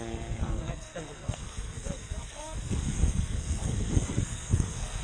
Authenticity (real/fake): fake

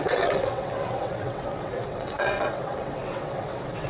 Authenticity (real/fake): fake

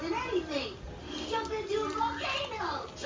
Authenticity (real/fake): real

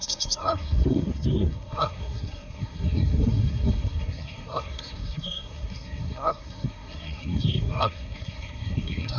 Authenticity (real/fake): fake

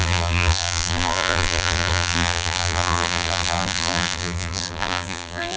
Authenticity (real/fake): fake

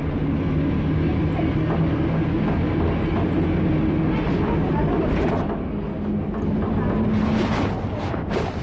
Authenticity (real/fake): real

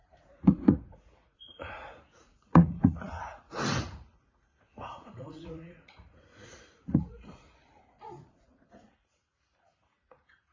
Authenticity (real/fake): fake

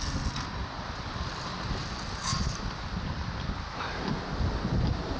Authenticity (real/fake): real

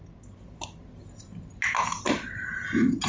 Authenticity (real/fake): real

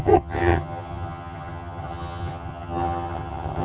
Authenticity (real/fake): fake